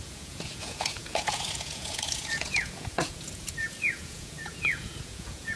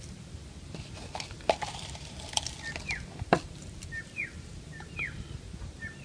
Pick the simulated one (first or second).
first